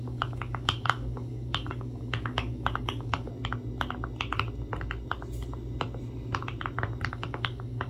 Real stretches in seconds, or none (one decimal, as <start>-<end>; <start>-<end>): 3.3-7.1